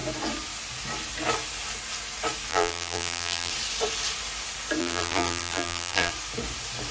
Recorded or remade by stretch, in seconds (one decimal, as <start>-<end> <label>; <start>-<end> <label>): 0.0-2.5 recorded; 2.5-3.5 remade; 3.5-4.8 recorded; 4.8-6.1 remade; 6.1-6.9 recorded